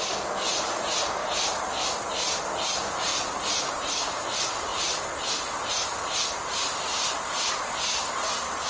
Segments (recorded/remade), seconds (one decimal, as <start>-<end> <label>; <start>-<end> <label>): 0.0-3.1 recorded; 3.1-3.7 remade; 3.7-8.7 recorded